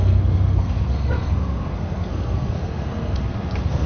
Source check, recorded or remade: remade